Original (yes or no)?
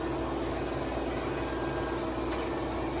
yes